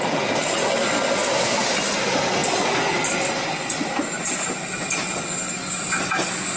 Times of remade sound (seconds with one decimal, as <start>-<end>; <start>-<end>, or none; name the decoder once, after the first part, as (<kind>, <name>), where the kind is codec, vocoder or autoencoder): none

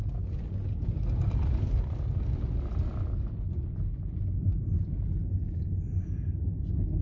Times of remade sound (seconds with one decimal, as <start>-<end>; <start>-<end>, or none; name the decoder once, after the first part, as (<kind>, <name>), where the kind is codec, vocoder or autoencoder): none

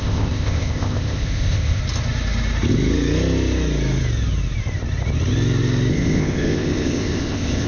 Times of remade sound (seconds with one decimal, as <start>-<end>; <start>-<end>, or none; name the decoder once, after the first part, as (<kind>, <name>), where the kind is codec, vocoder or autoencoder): 0.0-1.8 (codec, ZipCodec); 5.9-7.7

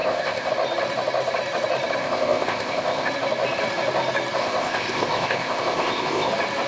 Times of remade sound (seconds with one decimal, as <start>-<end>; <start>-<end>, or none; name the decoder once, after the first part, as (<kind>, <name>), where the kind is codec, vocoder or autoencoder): 0.0-0.5 (codec, ZipCodec); 2.0-3.1; 4.4-6.3